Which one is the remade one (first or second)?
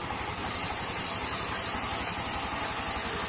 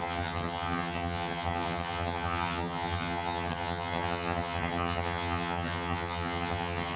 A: second